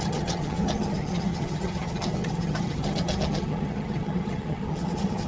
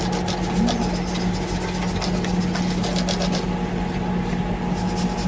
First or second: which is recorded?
second